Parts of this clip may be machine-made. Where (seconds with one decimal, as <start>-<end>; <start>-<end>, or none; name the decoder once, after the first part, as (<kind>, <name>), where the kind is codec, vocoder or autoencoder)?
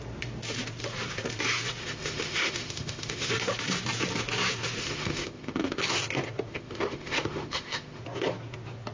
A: 1.8-3.3 (autoencoder, DAC-VAE); 4.8-5.8; 6.5-8.0